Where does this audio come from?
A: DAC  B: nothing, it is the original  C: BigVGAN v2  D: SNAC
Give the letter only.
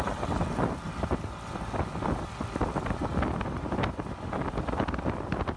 B